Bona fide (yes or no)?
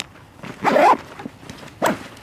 yes